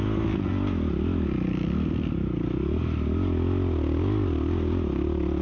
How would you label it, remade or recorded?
recorded